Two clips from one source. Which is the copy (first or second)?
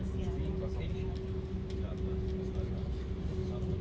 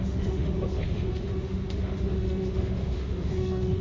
second